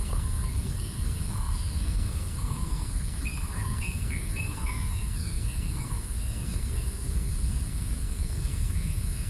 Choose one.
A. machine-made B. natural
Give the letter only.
A